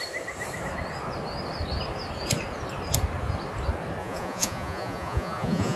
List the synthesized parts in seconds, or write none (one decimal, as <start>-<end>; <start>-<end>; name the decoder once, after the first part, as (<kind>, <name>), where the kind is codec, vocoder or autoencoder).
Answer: 4.0-5.8 (vocoder, Vocos)